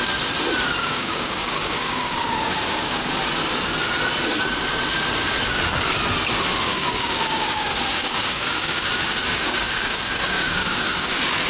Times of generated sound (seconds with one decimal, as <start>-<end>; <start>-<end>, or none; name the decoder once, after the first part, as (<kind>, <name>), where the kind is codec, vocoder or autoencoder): 0.8-3.1 (codec, DAC); 6.7-11.1